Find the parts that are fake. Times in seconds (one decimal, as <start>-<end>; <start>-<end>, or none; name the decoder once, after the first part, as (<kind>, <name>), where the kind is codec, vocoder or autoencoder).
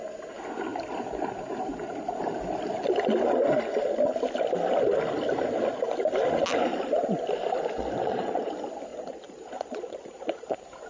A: 8.0-8.5 (vocoder, Vocos); 8.9-10.5